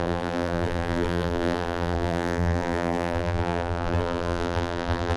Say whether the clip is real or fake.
fake